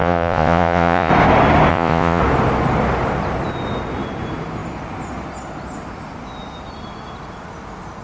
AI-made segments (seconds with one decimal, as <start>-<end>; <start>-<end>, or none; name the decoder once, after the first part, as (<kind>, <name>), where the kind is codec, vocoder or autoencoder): 0.0-1.1 (vocoder, Vocos); 1.7-2.2